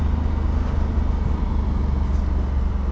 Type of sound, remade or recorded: recorded